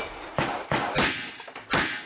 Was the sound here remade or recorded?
recorded